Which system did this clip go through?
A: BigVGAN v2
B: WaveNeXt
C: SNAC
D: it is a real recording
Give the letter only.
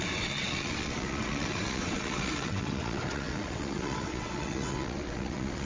B